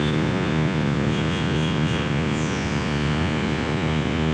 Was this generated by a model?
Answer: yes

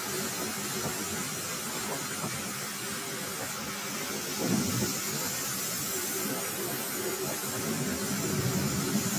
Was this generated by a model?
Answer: no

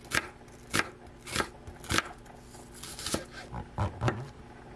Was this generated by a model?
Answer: no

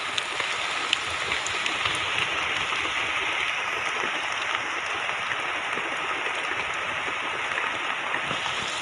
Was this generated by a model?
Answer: no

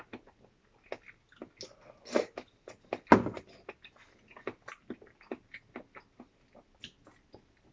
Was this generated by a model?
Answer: no